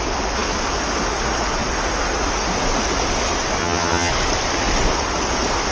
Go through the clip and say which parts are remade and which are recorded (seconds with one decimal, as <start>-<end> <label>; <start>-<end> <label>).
0.0-3.6 recorded; 3.6-4.1 remade; 4.1-5.7 recorded